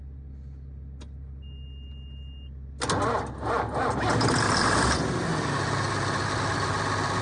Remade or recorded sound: recorded